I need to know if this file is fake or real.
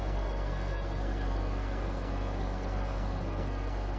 fake